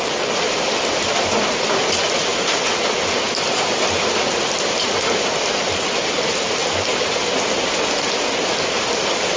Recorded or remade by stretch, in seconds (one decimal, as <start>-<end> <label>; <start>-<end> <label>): 0.0-9.4 recorded